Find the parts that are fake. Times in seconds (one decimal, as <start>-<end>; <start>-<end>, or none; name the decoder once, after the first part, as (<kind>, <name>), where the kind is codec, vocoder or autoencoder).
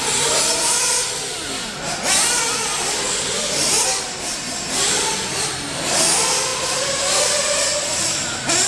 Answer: none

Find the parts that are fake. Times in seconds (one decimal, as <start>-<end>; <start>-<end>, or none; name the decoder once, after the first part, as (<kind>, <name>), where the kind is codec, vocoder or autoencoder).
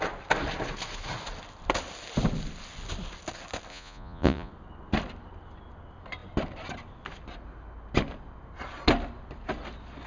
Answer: 3.7-4.5 (vocoder, Vocos)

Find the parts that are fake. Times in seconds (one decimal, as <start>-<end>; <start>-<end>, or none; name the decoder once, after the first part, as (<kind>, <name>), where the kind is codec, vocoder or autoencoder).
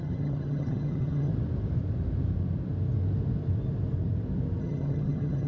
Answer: 0.0-1.3 (vocoder, HiFi-GAN); 4.6-5.5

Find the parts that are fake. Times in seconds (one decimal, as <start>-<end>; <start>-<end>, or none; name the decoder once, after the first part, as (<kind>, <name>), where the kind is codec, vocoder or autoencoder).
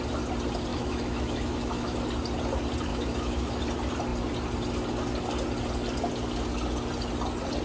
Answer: 0.7-2.0 (autoencoder, DAC-VAE); 2.9-3.6